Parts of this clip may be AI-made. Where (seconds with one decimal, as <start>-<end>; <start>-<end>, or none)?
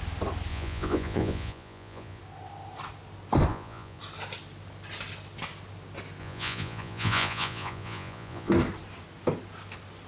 0.5-2.2; 3.5-4.0; 6.2-8.5